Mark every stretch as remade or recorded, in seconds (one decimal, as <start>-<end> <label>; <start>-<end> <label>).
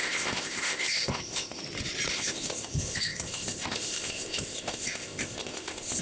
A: 0.0-1.6 remade; 1.6-2.1 recorded; 2.1-6.0 remade